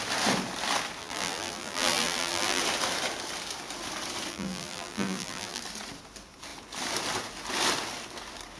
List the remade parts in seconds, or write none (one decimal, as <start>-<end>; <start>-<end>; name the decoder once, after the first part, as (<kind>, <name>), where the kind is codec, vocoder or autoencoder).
1.0-2.6 (vocoder, BigVGAN v2); 4.3-5.6